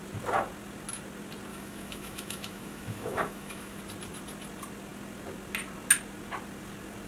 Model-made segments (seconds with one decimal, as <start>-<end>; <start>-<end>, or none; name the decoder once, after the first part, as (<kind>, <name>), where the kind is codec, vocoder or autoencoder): 1.5-3.8 (autoencoder, DAC-VAE)